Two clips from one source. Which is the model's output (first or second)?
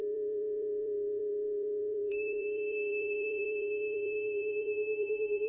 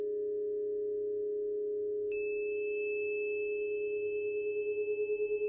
first